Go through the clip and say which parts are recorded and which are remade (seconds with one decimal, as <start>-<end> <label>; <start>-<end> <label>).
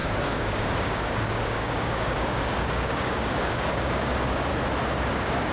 0.0-4.5 remade; 4.5-5.1 recorded; 5.1-5.5 remade